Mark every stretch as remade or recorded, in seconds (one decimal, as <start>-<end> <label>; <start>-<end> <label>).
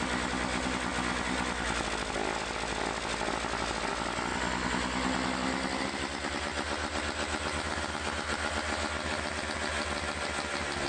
0.0-10.9 recorded